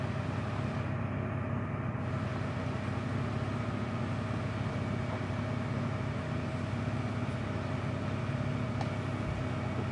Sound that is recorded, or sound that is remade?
recorded